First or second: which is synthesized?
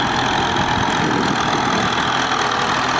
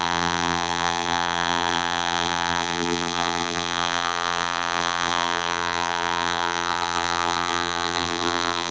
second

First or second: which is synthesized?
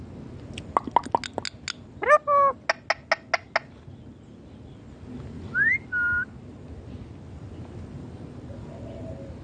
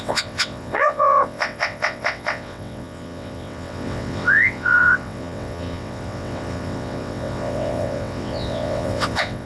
second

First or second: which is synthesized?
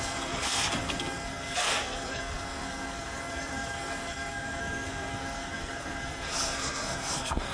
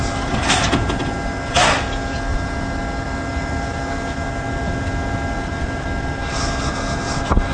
first